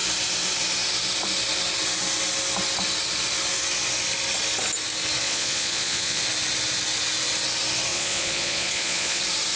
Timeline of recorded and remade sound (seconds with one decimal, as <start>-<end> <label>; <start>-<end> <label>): 0.0-5.2 recorded; 5.2-6.2 remade; 6.2-7.9 recorded; 7.9-9.2 remade; 9.2-9.6 recorded